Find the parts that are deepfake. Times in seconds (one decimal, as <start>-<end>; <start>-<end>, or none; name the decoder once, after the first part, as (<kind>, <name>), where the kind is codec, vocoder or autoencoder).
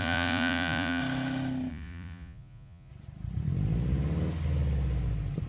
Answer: 0.0-1.0 (vocoder, Vocos); 1.7-2.9